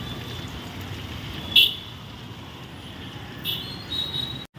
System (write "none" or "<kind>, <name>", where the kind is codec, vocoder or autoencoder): none